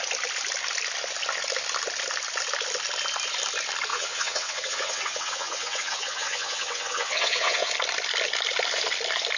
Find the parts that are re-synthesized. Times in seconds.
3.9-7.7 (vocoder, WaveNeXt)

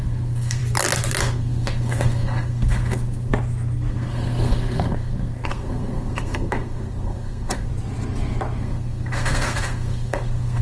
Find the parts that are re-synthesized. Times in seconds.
0.0-0.6 (codec, SNAC); 1.2-3.3; 3.9-7.7; 8.6-10.6